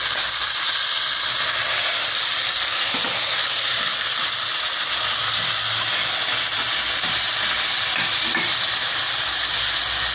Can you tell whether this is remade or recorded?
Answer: recorded